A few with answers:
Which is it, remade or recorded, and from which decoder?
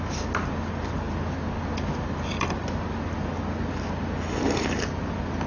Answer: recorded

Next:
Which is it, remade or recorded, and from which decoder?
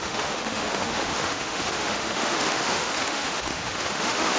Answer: remade, autoencoder, DAC-VAE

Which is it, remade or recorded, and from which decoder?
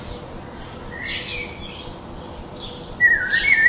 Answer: recorded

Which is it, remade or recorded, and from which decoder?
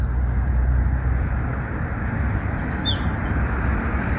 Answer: recorded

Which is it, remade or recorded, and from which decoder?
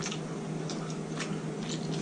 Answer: recorded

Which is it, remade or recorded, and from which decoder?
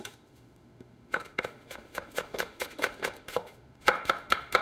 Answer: remade, autoencoder, DAC-VAE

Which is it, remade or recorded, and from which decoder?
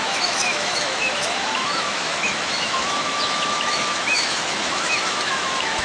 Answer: remade, autoencoder, DAC-VAE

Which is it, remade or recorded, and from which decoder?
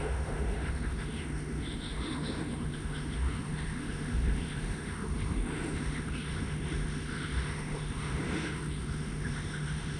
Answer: remade, autoencoder, DAC-VAE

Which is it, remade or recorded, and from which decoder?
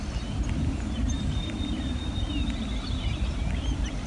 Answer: recorded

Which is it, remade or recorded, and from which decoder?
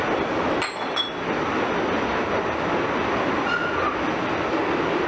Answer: recorded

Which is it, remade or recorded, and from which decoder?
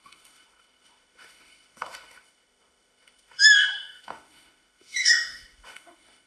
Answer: remade, autoencoder, DAC-VAE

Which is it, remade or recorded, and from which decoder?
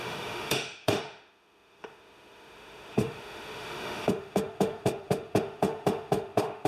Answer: remade, autoencoder, DAC-VAE